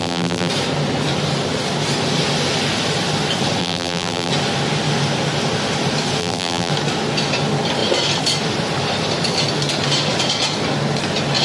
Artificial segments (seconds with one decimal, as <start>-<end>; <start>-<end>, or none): 0.0-0.5; 3.6-4.3; 6.2-6.7